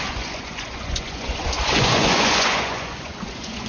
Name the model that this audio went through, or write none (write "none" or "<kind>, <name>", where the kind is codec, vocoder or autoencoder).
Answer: vocoder, Vocos